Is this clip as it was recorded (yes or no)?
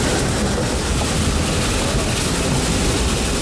yes